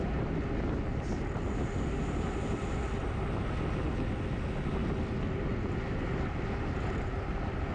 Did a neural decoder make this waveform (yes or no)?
no